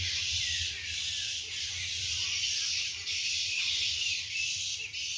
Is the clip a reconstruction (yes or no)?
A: yes